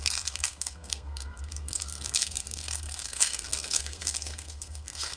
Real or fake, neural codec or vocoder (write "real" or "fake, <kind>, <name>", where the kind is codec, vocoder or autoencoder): fake, codec, SNAC